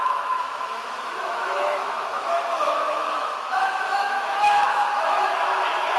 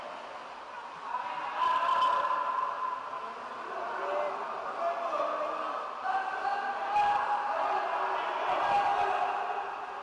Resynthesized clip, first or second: first